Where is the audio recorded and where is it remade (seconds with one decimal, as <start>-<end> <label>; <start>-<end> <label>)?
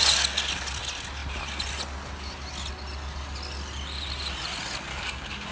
0.0-4.9 recorded; 4.9-5.5 remade